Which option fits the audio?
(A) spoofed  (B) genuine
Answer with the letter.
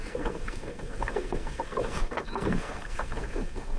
A